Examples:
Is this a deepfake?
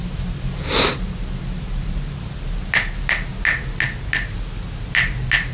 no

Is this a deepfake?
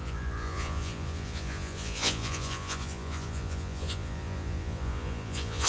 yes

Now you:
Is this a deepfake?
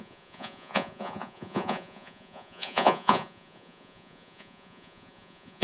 yes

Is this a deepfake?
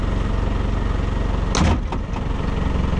no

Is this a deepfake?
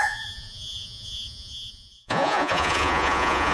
yes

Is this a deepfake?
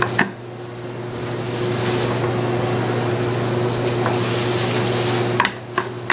no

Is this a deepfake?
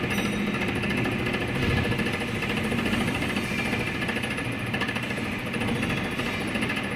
no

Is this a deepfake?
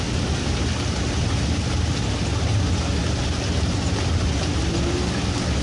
no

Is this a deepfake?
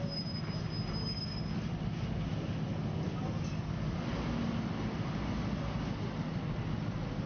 no